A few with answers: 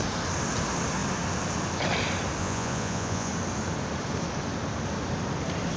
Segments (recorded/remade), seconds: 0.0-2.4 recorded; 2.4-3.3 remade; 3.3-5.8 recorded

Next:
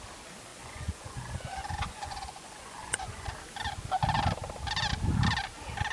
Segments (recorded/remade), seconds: 0.0-0.5 recorded; 0.5-3.3 remade; 3.3-5.9 recorded